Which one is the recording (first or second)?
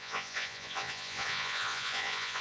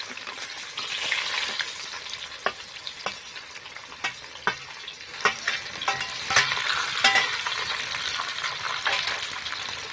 second